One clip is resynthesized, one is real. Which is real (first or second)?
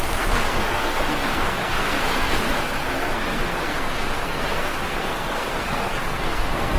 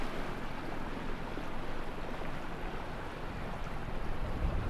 second